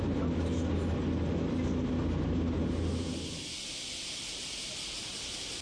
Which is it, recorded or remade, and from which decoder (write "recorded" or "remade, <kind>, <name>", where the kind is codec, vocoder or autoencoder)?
recorded